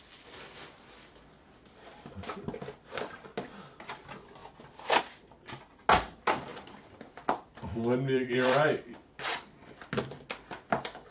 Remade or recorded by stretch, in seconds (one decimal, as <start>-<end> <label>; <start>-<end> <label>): 0.0-6.5 recorded; 6.5-8.8 remade; 8.8-11.1 recorded